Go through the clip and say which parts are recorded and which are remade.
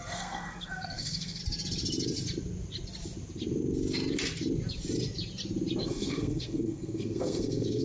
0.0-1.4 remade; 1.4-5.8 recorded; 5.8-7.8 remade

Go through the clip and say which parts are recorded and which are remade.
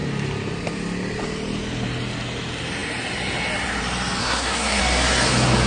0.0-4.2 recorded; 4.2-4.8 remade; 4.8-5.7 recorded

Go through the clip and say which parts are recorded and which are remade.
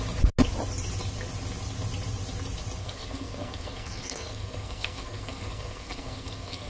0.0-2.8 recorded; 2.8-6.7 remade